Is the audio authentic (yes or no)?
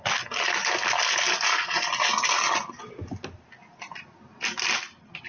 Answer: yes